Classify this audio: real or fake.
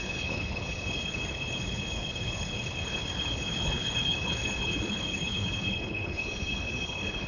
fake